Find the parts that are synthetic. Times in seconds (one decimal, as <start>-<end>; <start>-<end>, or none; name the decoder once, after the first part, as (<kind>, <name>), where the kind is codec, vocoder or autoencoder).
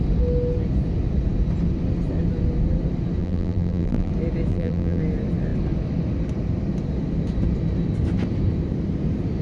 3.2-4.1 (vocoder, BigVGAN v2); 4.5-5.0